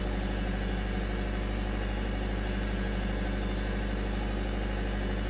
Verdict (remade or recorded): recorded